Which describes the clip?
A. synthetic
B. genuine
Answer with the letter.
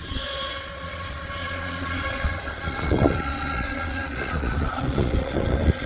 A